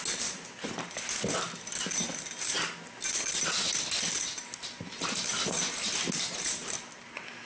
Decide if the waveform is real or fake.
real